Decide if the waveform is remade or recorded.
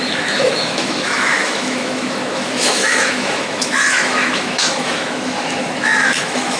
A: remade